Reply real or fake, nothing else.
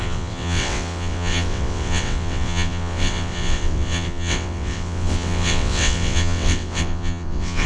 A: fake